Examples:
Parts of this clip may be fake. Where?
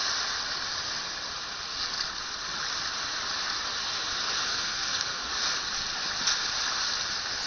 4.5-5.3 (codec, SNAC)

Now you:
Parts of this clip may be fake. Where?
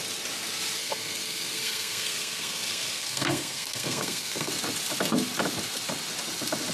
0.8-4.5 (codec, SNAC)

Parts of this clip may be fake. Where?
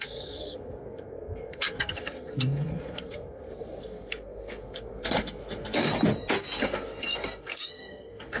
0.0-5.9 (codec, SNAC); 6.6-8.4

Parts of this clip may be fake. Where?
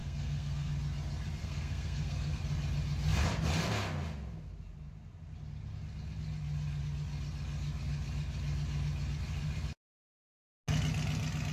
0.0-0.7 (codec, SNAC); 1.4-2.4